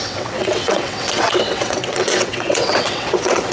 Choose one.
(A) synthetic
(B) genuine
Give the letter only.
A